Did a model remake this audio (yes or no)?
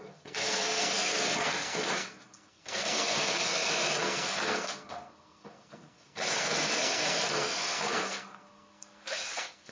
yes